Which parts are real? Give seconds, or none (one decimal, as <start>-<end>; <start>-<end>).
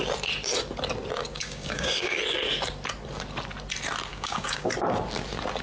0.0-1.3; 2.2-4.1; 4.7-5.6